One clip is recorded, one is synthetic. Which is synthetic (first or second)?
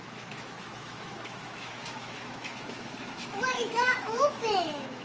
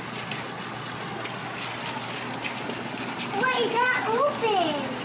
first